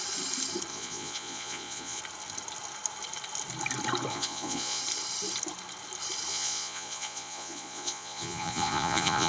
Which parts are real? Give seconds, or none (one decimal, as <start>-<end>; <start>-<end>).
0.0-0.7; 2.0-4.1; 4.8-6.3